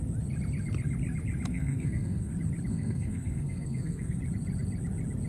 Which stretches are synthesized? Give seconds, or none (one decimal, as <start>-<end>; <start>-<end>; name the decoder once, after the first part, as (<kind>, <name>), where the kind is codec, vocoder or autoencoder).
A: 1.5-2.3 (codec, SNAC); 2.7-4.2